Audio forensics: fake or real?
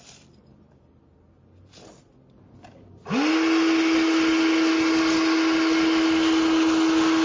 real